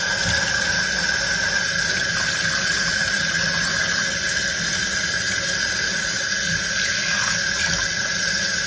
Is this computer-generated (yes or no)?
no